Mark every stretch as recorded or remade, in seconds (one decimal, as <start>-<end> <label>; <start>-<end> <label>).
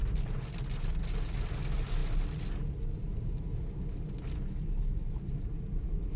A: 0.0-6.2 recorded